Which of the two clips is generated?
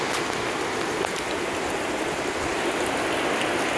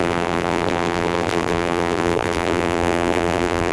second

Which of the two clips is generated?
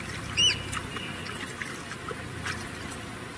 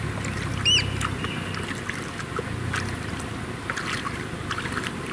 first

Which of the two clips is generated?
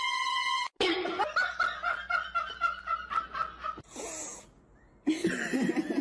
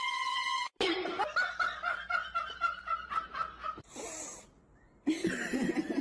second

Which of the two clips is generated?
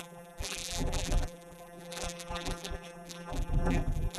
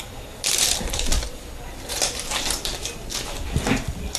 first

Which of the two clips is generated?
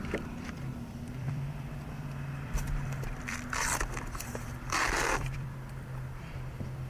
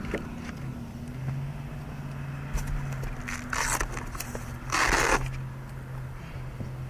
first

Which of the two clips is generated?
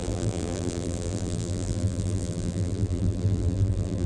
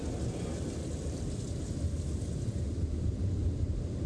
first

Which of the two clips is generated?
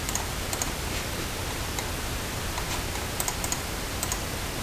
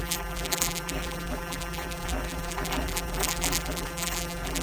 second